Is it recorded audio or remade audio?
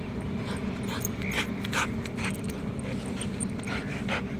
recorded